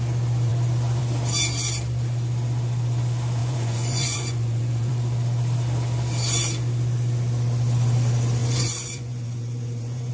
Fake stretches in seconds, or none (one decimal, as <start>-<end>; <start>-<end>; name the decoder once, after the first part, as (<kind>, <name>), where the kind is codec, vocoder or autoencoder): 3.4-4.9 (vocoder, Vocos); 8.4-10.1